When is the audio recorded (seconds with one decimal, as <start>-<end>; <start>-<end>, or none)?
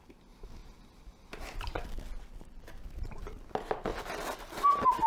0.0-3.9